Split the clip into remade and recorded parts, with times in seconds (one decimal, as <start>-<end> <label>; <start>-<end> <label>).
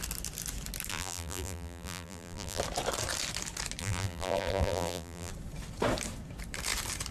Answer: 0.0-0.9 recorded; 0.9-2.6 remade; 2.6-3.8 recorded; 3.8-5.3 remade; 5.3-7.1 recorded